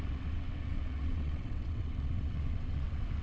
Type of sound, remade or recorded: remade